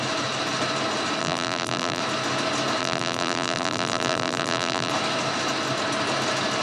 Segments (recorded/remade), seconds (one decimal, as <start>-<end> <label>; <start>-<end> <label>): 0.0-1.2 recorded; 1.2-2.0 remade; 2.0-2.8 recorded; 2.8-4.9 remade; 4.9-6.6 recorded